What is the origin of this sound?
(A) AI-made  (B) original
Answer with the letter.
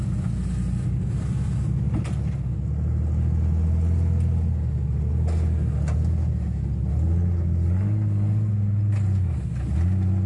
B